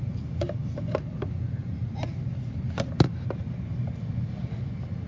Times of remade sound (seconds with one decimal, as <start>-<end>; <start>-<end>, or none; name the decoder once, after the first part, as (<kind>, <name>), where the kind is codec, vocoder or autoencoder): none